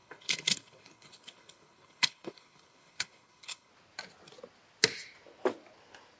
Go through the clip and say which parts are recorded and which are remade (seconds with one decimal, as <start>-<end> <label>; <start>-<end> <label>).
0.0-3.7 remade; 3.7-6.2 recorded